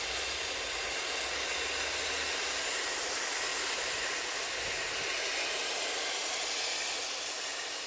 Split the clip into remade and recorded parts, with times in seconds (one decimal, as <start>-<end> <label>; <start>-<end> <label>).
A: 0.0-7.9 recorded